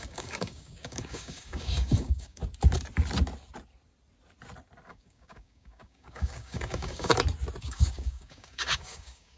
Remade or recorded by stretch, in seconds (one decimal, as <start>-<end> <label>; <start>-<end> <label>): 0.0-2.4 remade; 2.4-4.9 recorded; 4.9-7.1 remade; 7.1-7.6 recorded; 7.6-9.4 remade